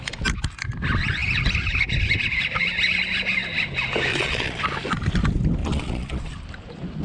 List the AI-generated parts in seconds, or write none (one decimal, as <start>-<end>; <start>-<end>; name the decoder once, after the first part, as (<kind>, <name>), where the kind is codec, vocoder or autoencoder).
4.1-4.6 (vocoder, Vocos); 5.6-6.3